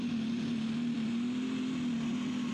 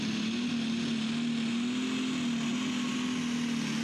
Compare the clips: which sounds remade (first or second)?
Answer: first